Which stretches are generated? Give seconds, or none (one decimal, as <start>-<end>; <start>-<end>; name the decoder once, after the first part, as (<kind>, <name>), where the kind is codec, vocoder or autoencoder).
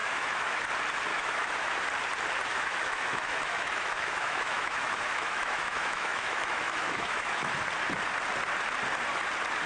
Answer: 0.0-0.6 (autoencoder, DAC-VAE); 1.1-1.7; 2.5-7.5